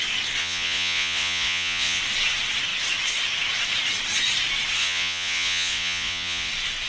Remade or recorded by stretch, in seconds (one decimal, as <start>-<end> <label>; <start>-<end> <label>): 0.0-0.4 recorded; 0.4-2.0 remade; 2.0-4.8 recorded; 4.8-6.5 remade; 6.5-6.9 recorded